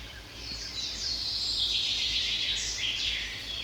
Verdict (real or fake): fake